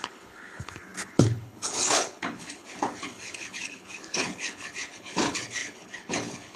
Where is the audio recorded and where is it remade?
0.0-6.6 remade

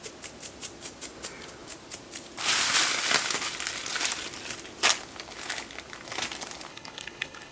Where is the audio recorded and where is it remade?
0.0-6.7 recorded; 6.7-7.5 remade